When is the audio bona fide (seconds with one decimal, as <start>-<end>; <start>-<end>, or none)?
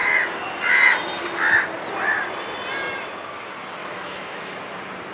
0.0-3.8; 4.6-5.1